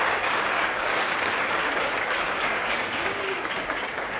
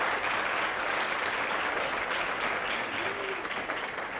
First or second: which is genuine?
second